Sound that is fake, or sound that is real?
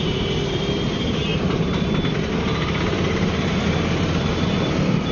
real